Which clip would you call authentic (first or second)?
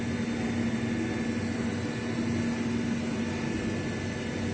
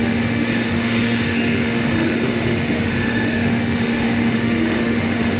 first